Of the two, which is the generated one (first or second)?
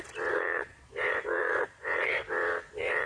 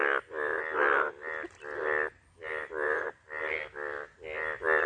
first